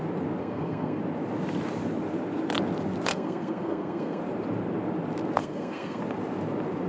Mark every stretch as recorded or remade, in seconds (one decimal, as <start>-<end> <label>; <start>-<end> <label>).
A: 0.0-0.4 recorded; 0.4-1.0 remade; 1.0-3.1 recorded; 3.1-4.2 remade; 4.2-5.4 recorded; 5.4-6.0 remade; 6.0-6.9 recorded